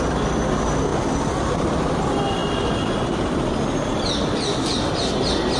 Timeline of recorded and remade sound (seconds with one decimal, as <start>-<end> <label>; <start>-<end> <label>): 0.0-5.6 recorded